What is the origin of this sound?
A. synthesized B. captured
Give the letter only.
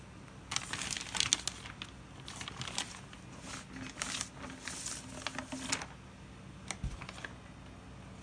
B